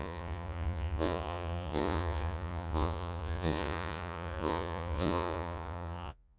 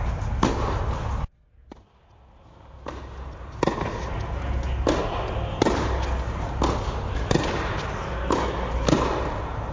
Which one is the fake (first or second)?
first